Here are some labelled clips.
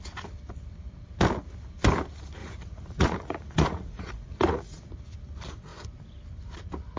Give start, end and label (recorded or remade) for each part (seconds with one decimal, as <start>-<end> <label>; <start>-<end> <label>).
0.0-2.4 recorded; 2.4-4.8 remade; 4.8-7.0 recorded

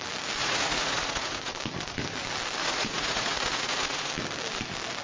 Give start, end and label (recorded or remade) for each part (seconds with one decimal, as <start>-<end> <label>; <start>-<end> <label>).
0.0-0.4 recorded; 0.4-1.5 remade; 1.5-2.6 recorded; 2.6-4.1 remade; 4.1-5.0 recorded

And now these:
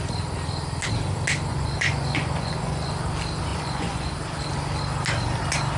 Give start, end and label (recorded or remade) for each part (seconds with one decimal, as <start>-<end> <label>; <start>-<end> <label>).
0.0-1.5 recorded; 1.5-2.9 remade; 2.9-3.5 recorded; 3.5-4.1 remade; 4.1-5.8 recorded